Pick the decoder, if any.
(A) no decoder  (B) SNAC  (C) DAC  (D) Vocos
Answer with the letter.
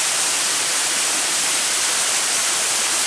A